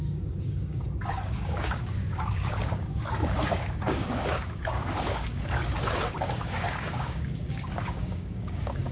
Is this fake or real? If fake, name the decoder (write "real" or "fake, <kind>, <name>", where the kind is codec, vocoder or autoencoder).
fake, codec, DAC